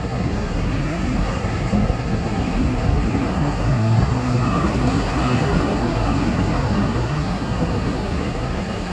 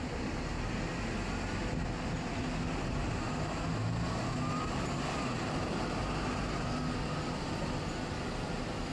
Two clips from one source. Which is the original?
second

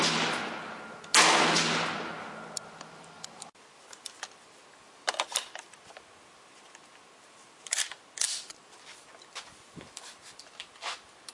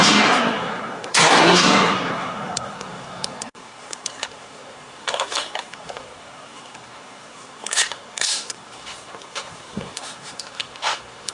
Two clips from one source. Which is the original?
first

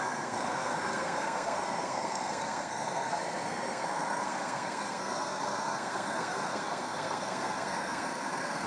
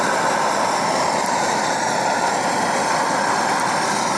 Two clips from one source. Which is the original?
second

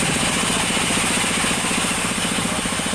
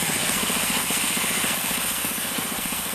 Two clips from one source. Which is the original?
first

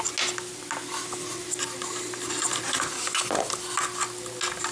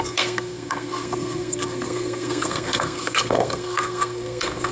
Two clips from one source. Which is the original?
first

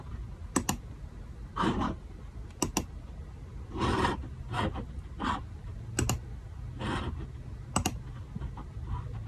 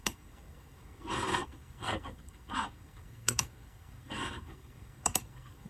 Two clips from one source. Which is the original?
first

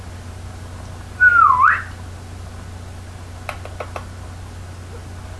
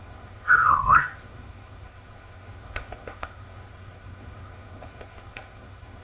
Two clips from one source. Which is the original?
first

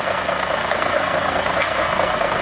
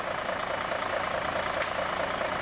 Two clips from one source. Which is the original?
second